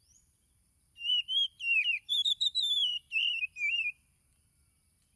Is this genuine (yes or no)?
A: no